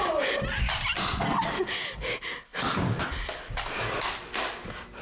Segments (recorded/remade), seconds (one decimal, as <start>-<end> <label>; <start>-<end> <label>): 0.0-5.0 recorded